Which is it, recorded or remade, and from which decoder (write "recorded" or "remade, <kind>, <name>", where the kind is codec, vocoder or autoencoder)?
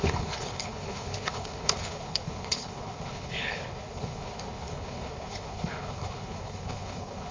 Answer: remade, codec, HILCodec